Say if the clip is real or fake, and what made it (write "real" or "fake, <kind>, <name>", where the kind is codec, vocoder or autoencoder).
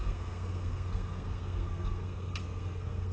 fake, codec, SNAC